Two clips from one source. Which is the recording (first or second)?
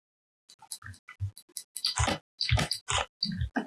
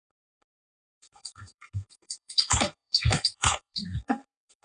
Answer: first